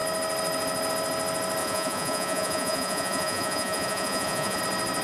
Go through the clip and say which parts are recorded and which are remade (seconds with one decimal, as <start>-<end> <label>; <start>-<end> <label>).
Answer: 0.0-1.6 recorded; 1.6-4.6 remade; 4.6-5.0 recorded